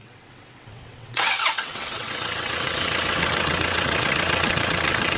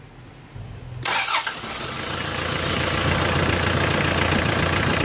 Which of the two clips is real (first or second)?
second